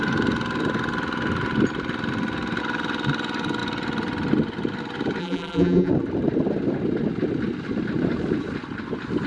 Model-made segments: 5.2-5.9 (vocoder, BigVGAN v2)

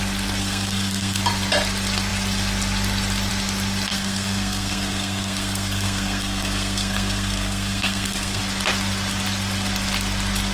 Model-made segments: 0.4-1.2 (codec, SNAC); 3.9-8.4

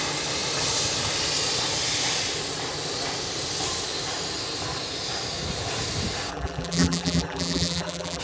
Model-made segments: 6.3-8.2 (vocoder, BigVGAN v2)